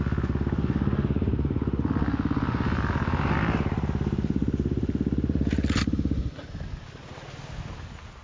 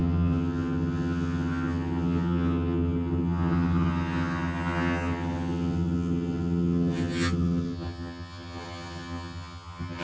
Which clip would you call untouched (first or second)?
first